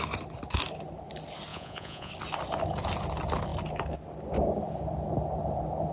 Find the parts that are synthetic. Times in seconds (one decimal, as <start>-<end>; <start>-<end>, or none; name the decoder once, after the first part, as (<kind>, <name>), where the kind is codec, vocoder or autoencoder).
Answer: 1.5-2.1 (vocoder, Vocos)